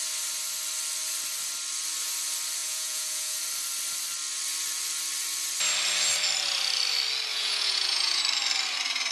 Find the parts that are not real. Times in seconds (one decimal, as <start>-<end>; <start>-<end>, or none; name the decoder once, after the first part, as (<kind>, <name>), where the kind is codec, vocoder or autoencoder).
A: 2.6-3.4 (vocoder, Vocos); 7.3-8.2